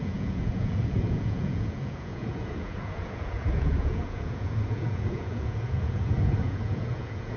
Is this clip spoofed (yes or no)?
yes